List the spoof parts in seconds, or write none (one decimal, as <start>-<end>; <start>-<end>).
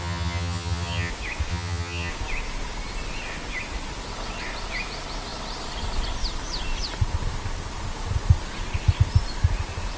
0.0-1.1; 1.5-2.1